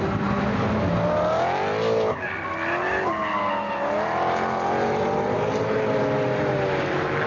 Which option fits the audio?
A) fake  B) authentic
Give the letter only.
B